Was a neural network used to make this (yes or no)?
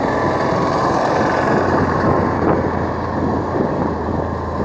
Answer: no